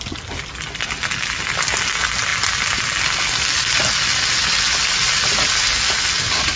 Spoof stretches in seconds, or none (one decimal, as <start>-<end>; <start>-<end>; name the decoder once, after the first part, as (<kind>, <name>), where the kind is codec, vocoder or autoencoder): none